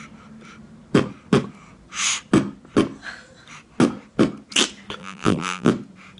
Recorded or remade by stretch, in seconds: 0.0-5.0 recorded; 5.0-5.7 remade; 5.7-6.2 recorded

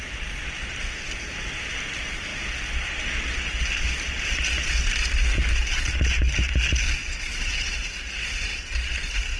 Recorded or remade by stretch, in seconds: 0.0-7.0 recorded; 7.0-7.9 remade; 7.9-9.4 recorded